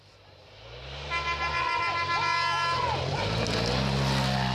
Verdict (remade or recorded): recorded